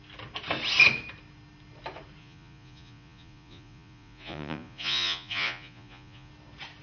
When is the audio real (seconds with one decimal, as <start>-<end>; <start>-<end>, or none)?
0.0-2.2; 6.3-6.8

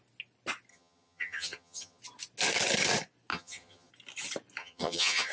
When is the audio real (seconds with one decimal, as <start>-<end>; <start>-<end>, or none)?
0.0-0.7; 2.0-3.3; 3.9-4.6

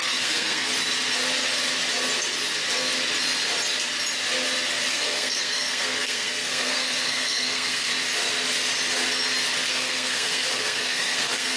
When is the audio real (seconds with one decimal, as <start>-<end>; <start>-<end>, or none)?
0.7-4.9; 7.9-9.7

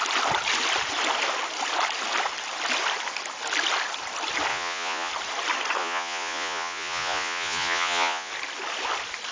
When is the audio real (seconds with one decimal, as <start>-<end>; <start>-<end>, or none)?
0.0-4.5; 5.1-5.8; 8.3-9.3

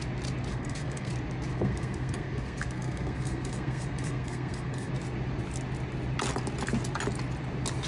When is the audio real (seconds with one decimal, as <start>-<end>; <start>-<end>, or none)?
0.0-0.5; 1.1-1.5; 4.9-7.9